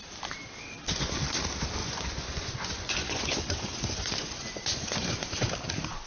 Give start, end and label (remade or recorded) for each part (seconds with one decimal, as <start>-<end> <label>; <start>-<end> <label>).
0.0-1.8 recorded; 1.8-5.5 remade; 5.5-6.1 recorded